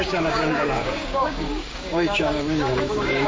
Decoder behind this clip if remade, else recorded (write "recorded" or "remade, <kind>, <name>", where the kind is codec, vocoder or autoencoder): remade, codec, DAC